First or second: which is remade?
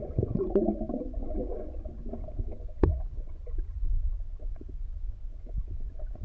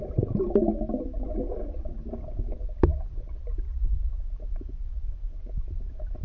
first